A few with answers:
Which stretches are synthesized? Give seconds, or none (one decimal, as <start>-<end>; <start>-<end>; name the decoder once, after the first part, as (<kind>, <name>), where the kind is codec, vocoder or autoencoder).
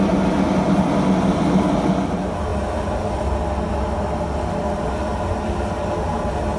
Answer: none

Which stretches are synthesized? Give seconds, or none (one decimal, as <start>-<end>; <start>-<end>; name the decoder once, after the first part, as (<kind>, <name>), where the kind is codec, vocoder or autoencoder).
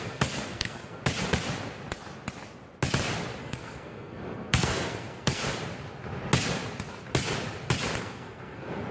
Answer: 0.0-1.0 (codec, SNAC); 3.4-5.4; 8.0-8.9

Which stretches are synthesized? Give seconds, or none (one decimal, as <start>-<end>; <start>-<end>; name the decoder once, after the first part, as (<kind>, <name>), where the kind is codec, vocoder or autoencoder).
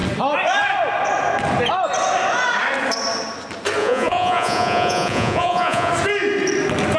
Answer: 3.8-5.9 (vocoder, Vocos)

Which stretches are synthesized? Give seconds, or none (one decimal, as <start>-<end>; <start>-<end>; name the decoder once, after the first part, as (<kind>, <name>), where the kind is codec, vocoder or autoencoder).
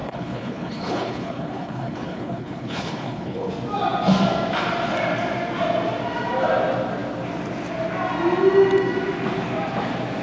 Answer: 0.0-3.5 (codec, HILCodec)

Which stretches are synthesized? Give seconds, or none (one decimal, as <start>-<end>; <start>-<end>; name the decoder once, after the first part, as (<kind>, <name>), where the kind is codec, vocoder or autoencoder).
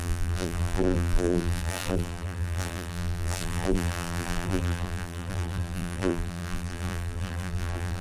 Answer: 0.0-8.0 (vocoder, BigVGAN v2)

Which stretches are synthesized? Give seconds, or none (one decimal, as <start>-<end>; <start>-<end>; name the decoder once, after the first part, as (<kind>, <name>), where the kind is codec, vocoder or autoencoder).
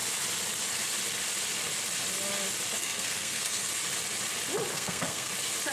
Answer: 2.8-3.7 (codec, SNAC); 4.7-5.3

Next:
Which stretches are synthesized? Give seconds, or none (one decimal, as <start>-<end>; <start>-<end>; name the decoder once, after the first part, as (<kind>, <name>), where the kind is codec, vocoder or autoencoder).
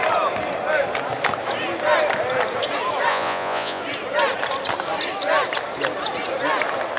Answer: 3.1-3.8 (vocoder, Vocos)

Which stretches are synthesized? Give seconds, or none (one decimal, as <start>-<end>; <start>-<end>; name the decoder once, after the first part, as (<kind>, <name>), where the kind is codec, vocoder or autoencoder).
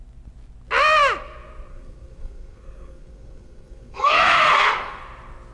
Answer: 1.7-5.0 (codec, SNAC)